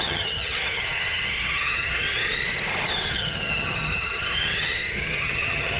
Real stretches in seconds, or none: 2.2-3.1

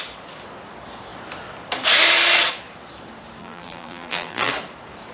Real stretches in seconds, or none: 0.0-3.4; 4.5-5.1